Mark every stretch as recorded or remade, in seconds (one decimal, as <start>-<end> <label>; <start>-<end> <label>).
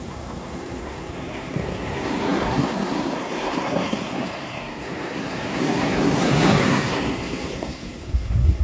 0.0-8.6 remade